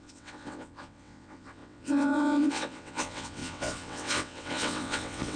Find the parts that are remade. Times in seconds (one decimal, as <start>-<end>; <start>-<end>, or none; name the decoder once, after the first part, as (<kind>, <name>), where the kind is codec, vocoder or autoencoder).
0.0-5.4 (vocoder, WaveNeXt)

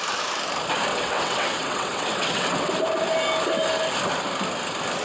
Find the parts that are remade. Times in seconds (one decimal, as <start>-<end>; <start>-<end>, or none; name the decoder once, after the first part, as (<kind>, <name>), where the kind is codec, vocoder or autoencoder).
0.9-2.7 (vocoder, WaveNeXt)

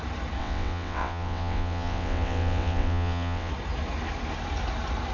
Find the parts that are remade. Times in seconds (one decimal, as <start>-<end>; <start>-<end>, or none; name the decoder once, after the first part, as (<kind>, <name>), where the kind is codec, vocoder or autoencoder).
0.4-3.5 (vocoder, WaveNeXt)